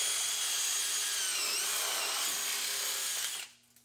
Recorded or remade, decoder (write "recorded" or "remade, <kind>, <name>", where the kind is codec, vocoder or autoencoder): recorded